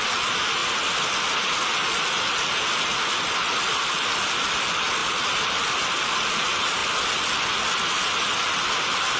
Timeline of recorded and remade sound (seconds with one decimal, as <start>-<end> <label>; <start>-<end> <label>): 0.0-9.2 recorded